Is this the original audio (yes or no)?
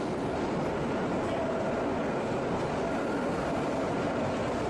yes